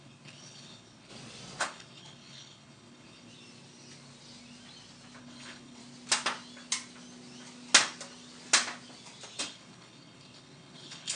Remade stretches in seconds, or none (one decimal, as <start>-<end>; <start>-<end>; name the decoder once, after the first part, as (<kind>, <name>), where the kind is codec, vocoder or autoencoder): 0.0-1.1 (codec, HILCodec); 1.6-3.3; 5.2-5.8; 9.4-11.2